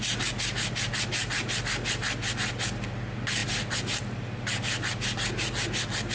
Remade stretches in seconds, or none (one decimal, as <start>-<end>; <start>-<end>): none